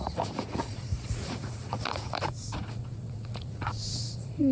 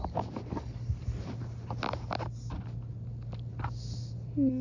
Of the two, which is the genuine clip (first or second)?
second